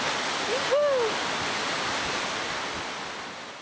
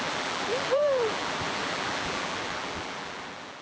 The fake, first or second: second